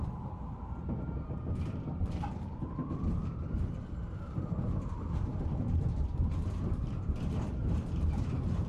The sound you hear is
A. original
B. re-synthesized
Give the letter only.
B